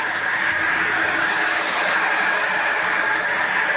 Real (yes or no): no